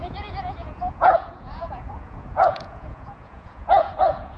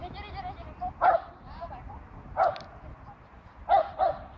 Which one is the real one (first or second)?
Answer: second